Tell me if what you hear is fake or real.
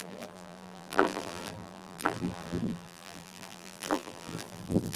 fake